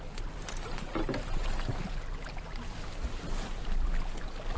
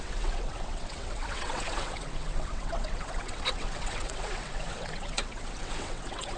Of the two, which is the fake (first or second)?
second